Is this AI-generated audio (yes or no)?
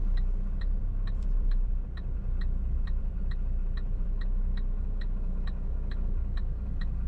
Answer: yes